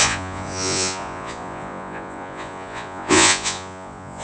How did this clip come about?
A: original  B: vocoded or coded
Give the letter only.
B